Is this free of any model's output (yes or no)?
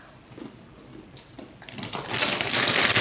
no